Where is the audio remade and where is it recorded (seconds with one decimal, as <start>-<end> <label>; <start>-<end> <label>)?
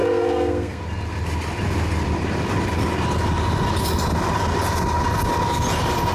0.0-0.8 remade; 0.8-6.1 recorded